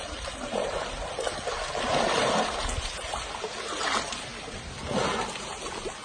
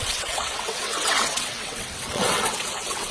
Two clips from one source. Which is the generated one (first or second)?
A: second